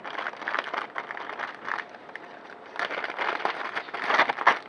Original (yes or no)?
yes